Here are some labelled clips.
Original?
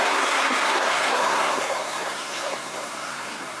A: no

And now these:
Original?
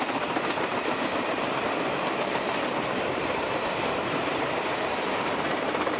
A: no